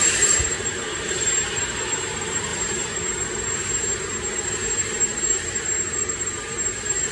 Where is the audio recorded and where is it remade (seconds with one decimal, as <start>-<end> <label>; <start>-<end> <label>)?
0.0-2.5 remade; 2.5-5.0 recorded; 5.0-7.1 remade